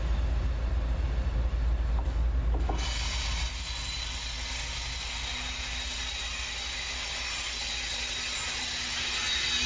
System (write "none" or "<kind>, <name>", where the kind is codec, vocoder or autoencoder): none